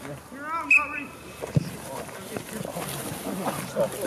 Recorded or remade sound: recorded